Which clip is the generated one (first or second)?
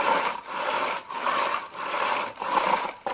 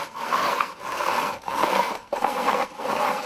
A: second